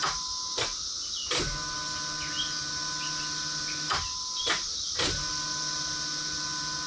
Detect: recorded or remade recorded